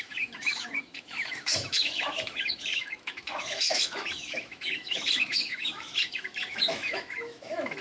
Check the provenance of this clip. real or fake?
fake